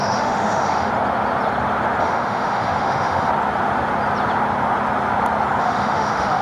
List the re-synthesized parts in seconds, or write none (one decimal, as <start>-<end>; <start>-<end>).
0.0-0.9; 2.0-3.3; 5.6-6.4